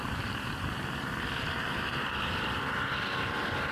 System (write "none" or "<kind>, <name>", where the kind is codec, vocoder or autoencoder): vocoder, BigVGAN v2